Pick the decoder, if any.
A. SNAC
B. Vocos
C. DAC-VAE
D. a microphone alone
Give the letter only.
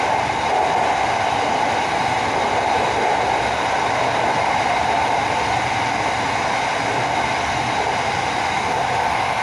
D